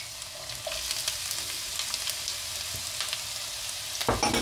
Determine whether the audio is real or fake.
real